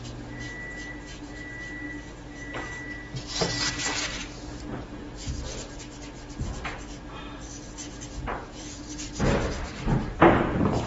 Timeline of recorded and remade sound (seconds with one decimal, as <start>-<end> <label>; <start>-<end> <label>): 0.0-8.3 recorded; 8.3-8.8 remade; 8.8-10.9 recorded